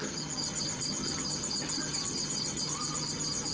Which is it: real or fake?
fake